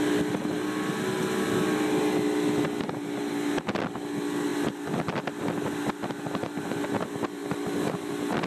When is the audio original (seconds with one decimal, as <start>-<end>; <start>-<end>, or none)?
0.0-7.4; 8.1-8.5